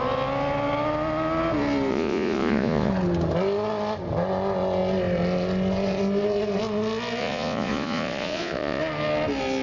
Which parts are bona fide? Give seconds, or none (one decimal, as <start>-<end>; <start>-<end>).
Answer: 0.0-1.9; 2.9-7.2; 8.8-9.6